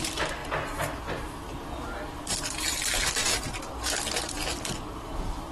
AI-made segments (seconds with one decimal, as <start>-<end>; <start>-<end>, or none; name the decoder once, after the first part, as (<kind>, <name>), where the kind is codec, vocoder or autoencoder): 0.0-0.4 (vocoder, BigVGAN v2); 1.1-3.7; 4.7-5.5